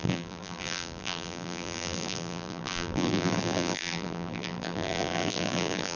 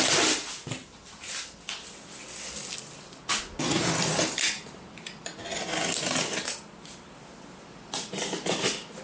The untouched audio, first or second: second